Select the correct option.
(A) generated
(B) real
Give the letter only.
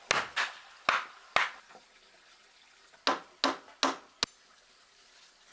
B